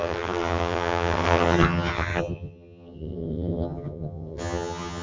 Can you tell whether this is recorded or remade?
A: remade